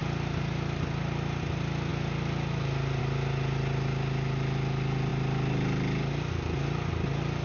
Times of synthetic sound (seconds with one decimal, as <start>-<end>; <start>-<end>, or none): none